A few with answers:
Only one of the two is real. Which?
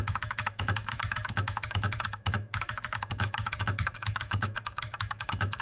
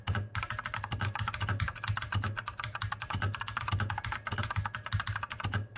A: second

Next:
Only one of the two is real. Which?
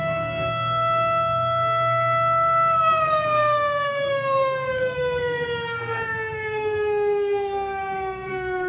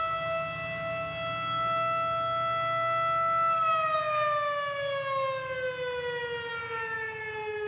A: second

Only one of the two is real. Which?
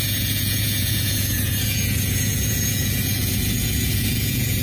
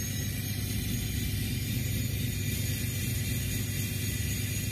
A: second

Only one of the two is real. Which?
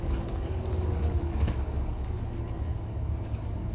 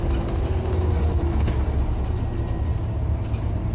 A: second